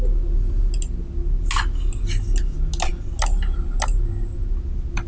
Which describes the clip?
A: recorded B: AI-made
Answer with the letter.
A